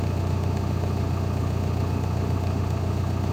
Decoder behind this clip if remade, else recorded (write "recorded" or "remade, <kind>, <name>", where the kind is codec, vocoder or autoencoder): remade, autoencoder, DAC-VAE